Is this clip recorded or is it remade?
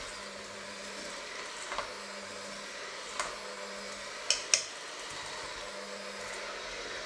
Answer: recorded